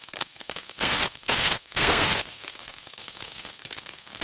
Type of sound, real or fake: fake